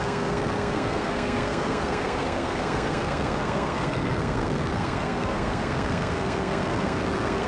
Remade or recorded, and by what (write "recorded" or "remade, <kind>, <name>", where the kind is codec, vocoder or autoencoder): remade, codec, SNAC